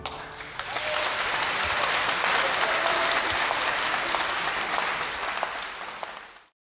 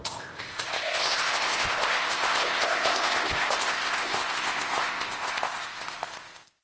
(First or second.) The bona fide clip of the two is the first